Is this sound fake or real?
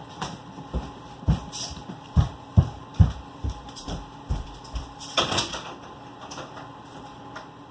fake